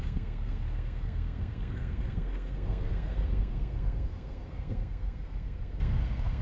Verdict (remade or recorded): remade